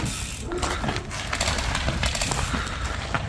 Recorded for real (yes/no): yes